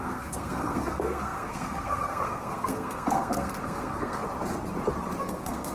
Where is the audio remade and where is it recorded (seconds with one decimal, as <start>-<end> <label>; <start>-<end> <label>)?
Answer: 0.0-4.2 remade; 4.2-5.2 recorded; 5.2-5.7 remade